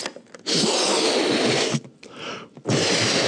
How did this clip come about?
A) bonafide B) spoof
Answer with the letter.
A